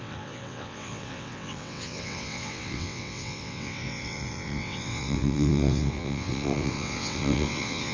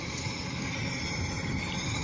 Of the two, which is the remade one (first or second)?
first